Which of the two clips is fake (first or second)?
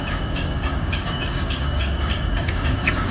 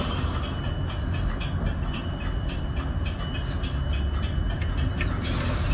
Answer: first